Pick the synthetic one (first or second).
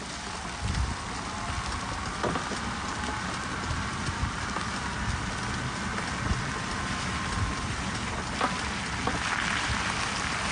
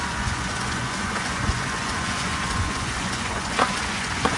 second